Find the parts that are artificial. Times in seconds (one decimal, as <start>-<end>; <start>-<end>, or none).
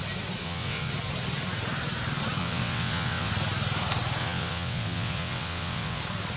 0.4-0.9; 2.4-3.3; 4.2-6.0